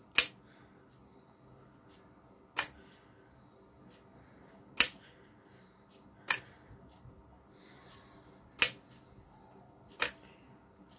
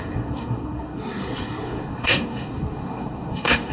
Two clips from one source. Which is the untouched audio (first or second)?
first